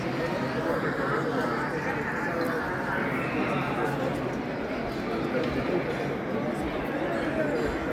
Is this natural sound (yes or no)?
yes